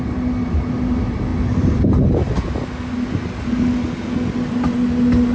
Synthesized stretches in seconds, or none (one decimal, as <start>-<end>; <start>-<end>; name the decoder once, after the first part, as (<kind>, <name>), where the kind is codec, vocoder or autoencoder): none